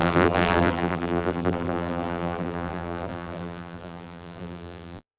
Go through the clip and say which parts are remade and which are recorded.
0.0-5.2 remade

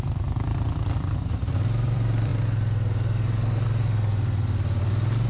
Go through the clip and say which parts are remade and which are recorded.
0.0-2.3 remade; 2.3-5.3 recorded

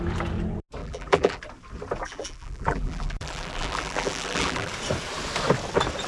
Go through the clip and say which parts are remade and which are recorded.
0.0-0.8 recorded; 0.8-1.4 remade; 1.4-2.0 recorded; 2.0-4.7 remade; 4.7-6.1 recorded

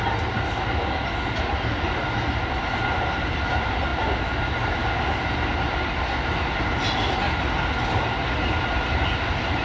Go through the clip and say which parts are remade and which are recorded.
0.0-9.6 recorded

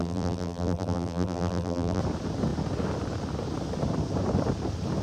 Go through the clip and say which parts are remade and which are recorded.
0.0-2.0 remade; 2.0-5.0 recorded

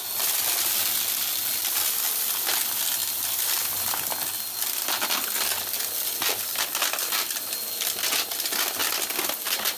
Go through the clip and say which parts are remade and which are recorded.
0.0-9.8 recorded

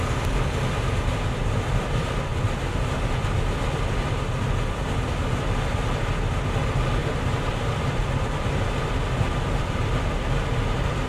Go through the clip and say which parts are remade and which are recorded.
0.0-7.0 recorded; 7.0-8.0 remade; 8.0-11.1 recorded

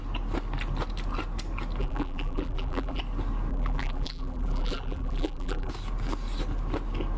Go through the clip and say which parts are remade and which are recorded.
0.0-1.8 recorded; 1.8-3.0 remade; 3.0-3.5 recorded; 3.5-5.7 remade; 5.7-7.2 recorded